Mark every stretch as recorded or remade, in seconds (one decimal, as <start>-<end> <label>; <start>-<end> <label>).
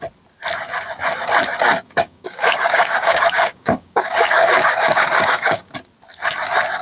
0.0-1.6 recorded; 1.6-5.7 remade; 5.7-6.8 recorded